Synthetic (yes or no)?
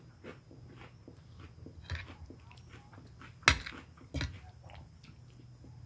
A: no